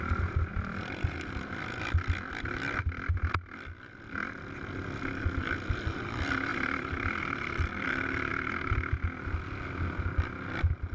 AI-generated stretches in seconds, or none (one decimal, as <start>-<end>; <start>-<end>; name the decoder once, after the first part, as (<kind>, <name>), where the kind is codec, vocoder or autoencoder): 0.5-3.3 (vocoder, BigVGAN v2); 6.5-8.3